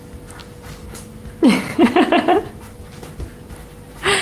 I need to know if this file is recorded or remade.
recorded